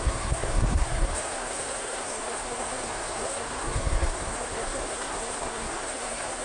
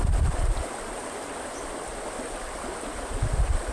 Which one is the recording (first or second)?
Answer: second